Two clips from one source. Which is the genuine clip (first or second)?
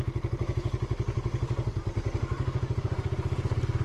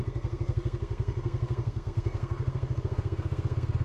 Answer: first